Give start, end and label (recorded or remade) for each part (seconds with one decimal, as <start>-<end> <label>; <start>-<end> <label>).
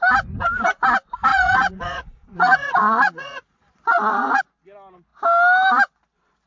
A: 0.0-1.3 recorded; 1.3-4.4 remade; 4.4-6.5 recorded